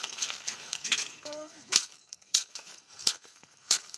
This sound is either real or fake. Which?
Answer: fake